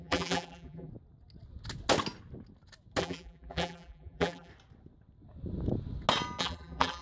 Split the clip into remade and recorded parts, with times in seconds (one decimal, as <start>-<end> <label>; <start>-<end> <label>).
0.0-0.9 remade; 0.9-3.0 recorded; 3.0-4.5 remade; 4.5-6.4 recorded; 6.4-7.0 remade